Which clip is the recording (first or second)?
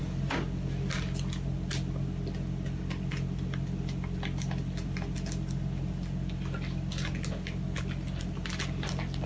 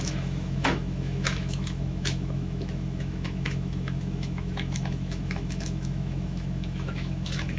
first